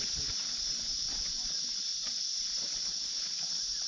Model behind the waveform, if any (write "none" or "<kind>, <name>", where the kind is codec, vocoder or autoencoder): none